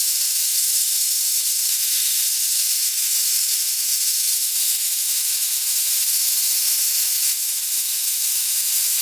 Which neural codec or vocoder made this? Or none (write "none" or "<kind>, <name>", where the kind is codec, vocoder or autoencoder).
autoencoder, DAC-VAE